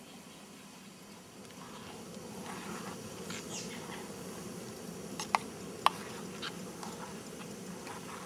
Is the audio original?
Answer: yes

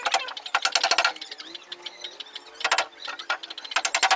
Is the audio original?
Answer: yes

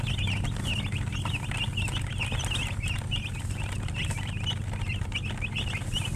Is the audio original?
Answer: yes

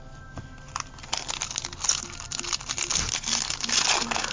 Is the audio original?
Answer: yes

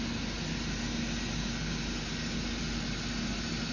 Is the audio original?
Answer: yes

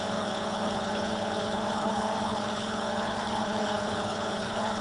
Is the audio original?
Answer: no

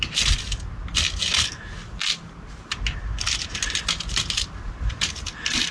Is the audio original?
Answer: yes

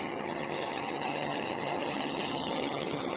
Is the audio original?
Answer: no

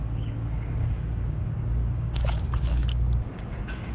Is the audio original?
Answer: no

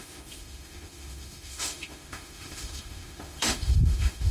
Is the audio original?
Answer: no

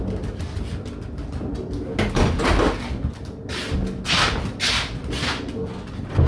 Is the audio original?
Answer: yes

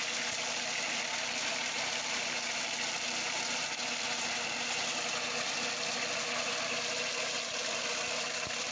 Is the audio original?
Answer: yes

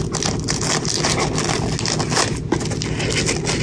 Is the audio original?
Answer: yes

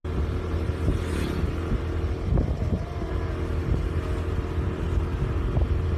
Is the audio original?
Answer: yes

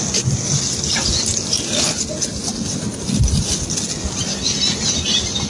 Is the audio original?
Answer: yes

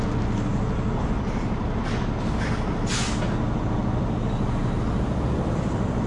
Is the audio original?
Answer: yes